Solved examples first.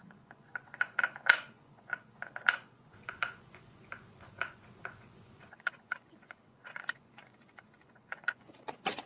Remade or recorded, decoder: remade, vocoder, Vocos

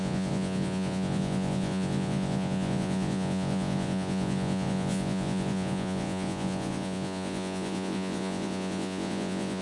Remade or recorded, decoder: remade, vocoder, Vocos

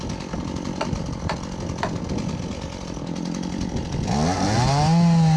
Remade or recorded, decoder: recorded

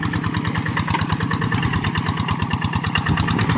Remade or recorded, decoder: recorded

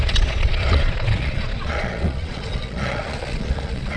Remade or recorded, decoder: remade, vocoder, Vocos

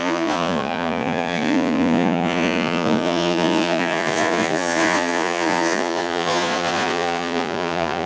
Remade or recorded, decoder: remade, vocoder, Vocos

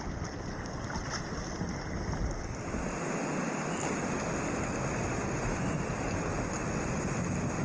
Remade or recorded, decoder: recorded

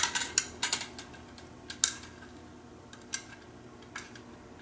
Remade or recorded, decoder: recorded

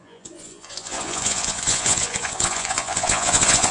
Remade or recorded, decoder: remade, vocoder, Vocos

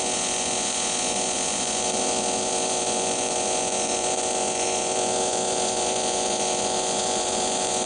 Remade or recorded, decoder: remade, vocoder, Vocos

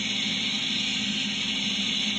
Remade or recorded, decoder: recorded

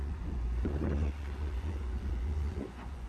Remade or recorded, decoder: remade, vocoder, Vocos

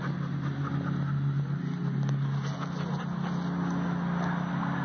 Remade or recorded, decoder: recorded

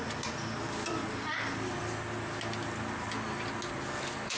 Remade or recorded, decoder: recorded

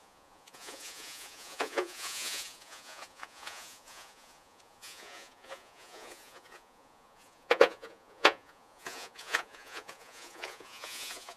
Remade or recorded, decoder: remade, vocoder, Vocos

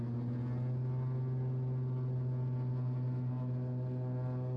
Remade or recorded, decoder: recorded